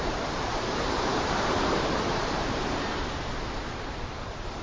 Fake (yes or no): yes